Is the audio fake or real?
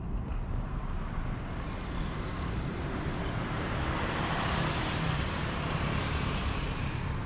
fake